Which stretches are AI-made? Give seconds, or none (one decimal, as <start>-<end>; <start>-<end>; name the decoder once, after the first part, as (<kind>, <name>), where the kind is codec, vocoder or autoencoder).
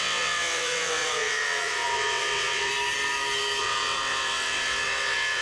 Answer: 0.0-2.7 (vocoder, WaveNeXt); 3.6-5.4